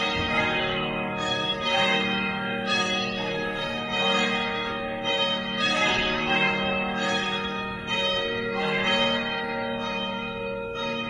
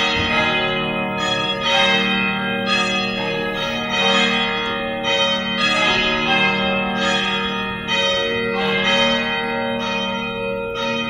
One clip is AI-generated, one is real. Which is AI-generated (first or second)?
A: first